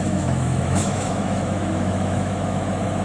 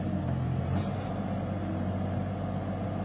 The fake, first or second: first